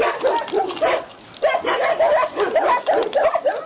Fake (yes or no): no